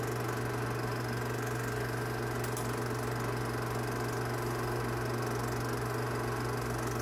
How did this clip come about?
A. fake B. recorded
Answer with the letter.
B